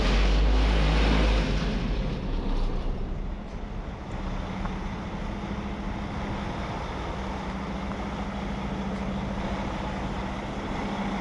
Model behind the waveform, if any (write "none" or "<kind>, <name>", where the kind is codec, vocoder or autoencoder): none